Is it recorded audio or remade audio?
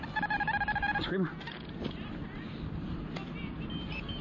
recorded